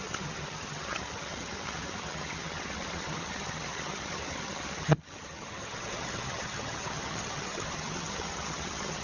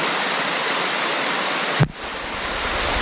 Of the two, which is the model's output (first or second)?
first